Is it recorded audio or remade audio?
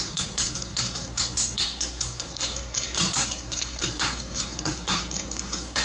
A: remade